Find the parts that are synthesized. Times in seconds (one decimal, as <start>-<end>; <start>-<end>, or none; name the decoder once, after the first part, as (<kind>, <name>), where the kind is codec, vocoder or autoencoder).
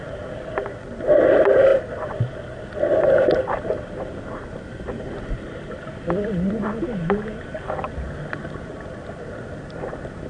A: none